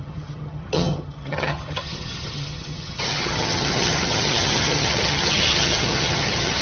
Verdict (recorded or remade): remade